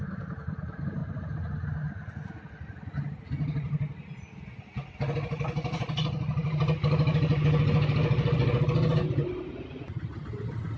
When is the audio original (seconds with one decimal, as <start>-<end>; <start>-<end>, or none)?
0.0-10.8